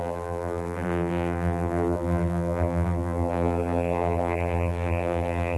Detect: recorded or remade remade